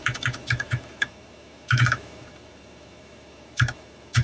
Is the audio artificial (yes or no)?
yes